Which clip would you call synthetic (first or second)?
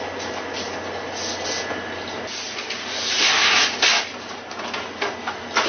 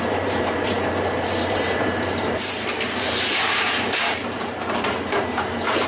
second